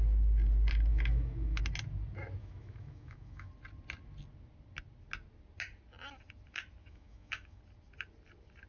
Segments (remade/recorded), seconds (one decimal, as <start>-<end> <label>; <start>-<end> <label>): 0.0-0.9 recorded; 0.9-1.6 remade; 1.6-2.4 recorded; 2.4-3.5 remade; 3.5-6.8 recorded; 6.8-7.6 remade; 7.6-8.7 recorded